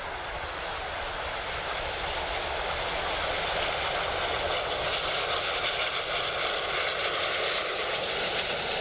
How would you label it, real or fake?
real